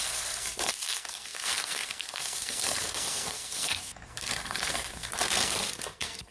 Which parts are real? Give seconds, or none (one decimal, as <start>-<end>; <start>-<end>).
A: none